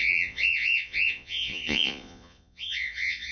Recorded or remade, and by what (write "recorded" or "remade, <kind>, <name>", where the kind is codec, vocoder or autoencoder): remade, vocoder, Vocos